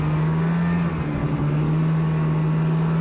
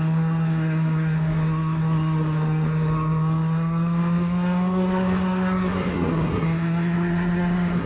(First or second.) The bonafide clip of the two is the first